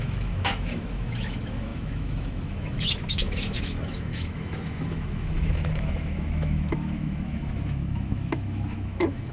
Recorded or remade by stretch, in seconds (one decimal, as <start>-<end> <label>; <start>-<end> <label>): 0.0-9.3 remade